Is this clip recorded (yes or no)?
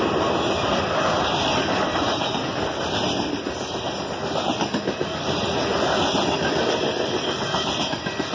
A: yes